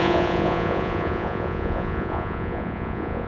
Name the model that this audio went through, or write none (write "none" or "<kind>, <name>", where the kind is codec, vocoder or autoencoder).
vocoder, Vocos